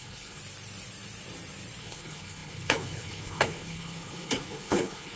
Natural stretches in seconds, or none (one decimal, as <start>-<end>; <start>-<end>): 0.4-1.8